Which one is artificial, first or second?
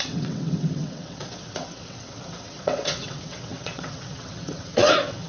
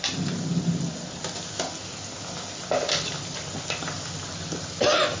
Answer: first